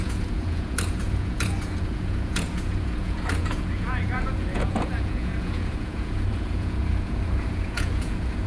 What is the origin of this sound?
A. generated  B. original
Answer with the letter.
A